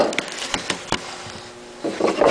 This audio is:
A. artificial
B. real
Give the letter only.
B